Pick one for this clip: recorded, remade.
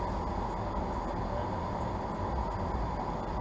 recorded